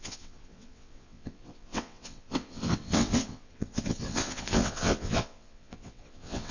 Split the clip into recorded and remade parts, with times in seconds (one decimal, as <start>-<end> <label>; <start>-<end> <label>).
0.0-6.5 remade